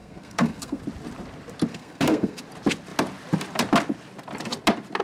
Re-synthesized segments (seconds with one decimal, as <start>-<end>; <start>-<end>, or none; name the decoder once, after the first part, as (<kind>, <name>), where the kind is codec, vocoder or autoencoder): 0.0-0.8 (codec, SNAC); 1.7-2.4